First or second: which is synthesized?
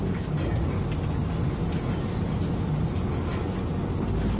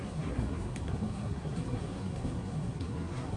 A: second